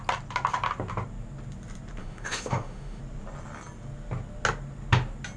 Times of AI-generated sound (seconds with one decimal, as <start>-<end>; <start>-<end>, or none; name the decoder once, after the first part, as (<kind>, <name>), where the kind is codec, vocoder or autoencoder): 2.0-3.0 (autoencoder, DAC-VAE)